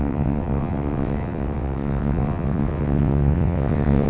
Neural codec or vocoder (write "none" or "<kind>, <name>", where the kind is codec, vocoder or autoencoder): vocoder, WaveNeXt